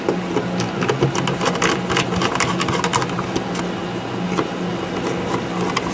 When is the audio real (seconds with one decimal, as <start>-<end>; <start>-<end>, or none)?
0.0-5.9